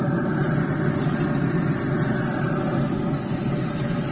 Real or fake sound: real